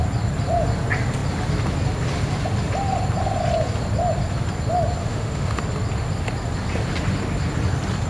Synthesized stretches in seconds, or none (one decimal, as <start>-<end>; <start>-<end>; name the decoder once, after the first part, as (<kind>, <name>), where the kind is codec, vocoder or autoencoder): 5.0-5.6 (autoencoder, DAC-VAE)